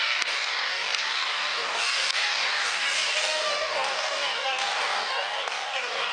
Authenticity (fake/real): fake